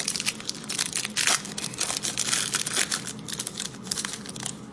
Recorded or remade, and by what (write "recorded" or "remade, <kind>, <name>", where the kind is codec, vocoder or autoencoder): recorded